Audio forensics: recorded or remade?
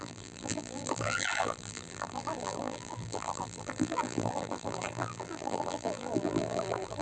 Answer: remade